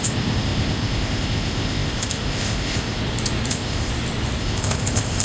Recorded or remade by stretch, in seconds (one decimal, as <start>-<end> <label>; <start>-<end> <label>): 0.0-3.0 remade; 3.0-3.5 recorded; 3.5-3.9 remade; 3.9-4.4 recorded; 4.4-5.2 remade